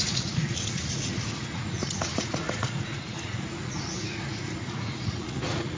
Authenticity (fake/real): fake